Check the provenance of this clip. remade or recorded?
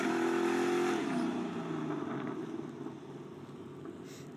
recorded